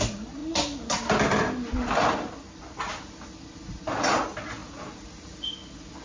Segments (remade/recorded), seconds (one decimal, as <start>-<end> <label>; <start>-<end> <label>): 0.0-4.6 recorded; 4.6-5.5 remade; 5.5-6.0 recorded